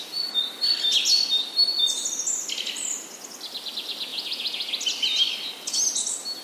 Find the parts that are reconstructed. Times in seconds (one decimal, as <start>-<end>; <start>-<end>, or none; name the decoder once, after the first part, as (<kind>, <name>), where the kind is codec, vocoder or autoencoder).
4.1-4.7 (vocoder, Vocos)